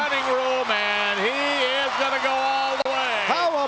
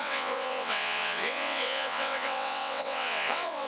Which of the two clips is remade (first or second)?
second